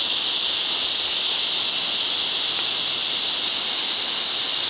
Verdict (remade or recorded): recorded